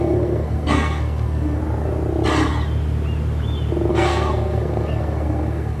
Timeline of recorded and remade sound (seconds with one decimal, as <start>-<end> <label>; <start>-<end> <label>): 0.0-1.6 remade; 1.6-3.9 recorded; 3.9-5.8 remade